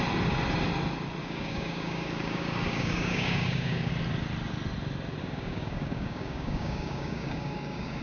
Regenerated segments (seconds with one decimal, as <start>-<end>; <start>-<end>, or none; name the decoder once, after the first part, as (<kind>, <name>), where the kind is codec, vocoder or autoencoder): 1.2-3.9 (codec, DAC); 5.2-8.0